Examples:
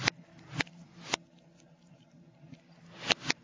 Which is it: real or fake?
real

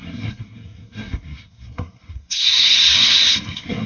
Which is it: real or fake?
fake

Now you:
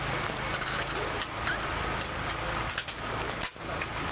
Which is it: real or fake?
real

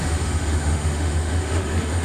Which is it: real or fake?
fake